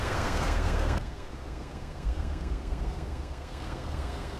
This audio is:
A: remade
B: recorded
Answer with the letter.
A